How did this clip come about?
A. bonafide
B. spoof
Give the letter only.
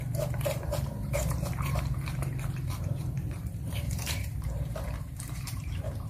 B